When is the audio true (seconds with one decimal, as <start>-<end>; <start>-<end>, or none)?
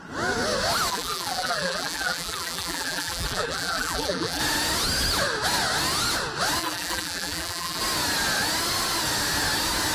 0.0-0.9; 4.4-6.6; 7.8-9.9